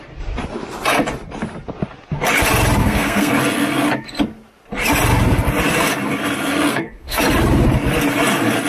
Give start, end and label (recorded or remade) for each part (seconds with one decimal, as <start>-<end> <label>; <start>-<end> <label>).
0.0-2.8 recorded; 2.8-3.3 remade; 3.3-6.7 recorded; 6.7-7.2 remade; 7.2-8.7 recorded